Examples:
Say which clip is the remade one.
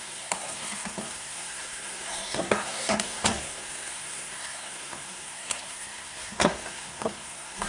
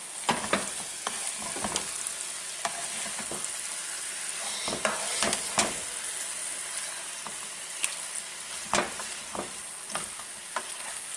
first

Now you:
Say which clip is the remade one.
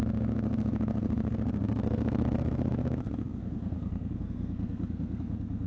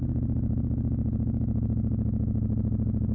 first